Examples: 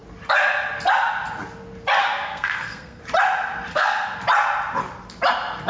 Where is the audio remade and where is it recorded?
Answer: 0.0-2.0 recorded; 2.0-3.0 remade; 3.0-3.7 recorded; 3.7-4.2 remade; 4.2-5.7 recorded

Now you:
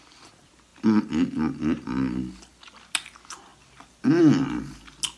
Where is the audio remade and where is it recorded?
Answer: 0.0-5.2 recorded

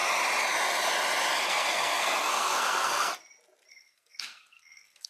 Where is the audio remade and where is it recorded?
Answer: 0.0-1.4 recorded; 1.4-3.1 remade; 3.1-3.7 recorded; 3.7-5.1 remade

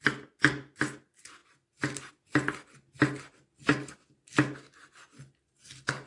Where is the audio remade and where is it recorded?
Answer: 0.0-6.1 recorded

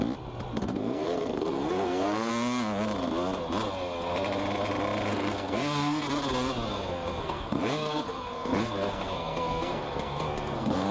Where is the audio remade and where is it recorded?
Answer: 0.0-0.6 recorded; 0.6-2.3 remade; 2.3-5.1 recorded; 5.1-6.0 remade; 6.0-6.7 recorded; 6.7-10.9 remade